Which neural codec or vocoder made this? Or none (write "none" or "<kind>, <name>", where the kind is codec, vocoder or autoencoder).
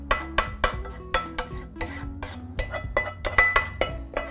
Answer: none